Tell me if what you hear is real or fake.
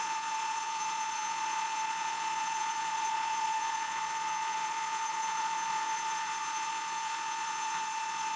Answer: fake